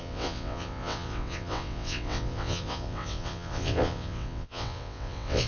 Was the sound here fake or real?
fake